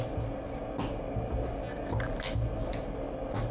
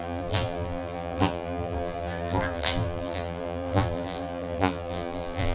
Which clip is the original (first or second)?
first